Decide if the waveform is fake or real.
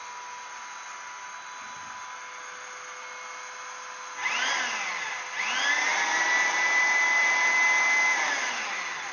real